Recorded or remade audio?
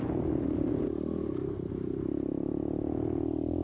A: recorded